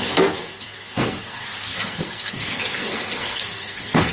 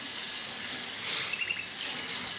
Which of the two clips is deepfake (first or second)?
first